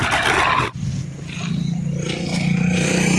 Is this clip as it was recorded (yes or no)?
yes